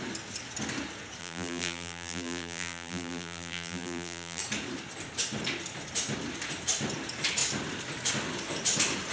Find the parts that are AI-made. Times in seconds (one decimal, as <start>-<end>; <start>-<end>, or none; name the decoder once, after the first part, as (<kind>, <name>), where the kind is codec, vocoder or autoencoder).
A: 1.2-4.4 (vocoder, BigVGAN v2)